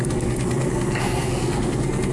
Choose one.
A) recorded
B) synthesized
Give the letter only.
B